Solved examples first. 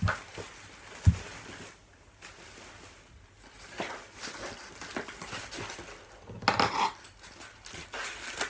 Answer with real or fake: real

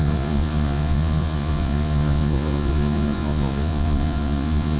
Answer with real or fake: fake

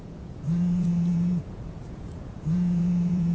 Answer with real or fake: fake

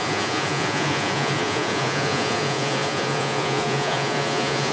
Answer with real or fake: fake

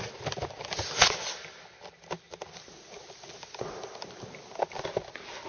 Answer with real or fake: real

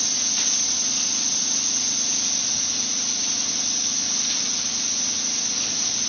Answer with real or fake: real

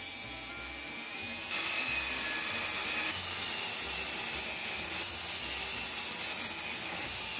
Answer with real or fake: real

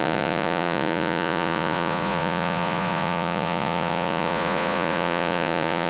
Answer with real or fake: fake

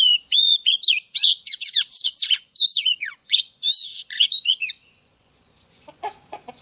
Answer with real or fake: fake